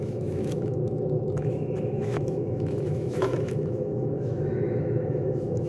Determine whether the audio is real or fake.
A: fake